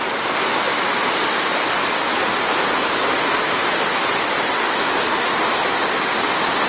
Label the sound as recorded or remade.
recorded